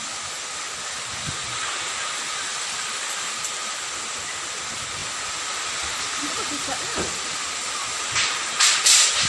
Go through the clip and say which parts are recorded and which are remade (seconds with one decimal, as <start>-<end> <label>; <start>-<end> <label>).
0.0-2.5 recorded; 2.5-3.5 remade; 3.5-9.3 recorded